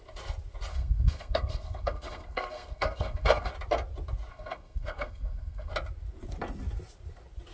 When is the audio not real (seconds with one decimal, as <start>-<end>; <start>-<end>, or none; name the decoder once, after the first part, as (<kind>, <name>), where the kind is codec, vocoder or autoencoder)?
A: 0.7-3.5 (codec, SNAC); 4.3-5.7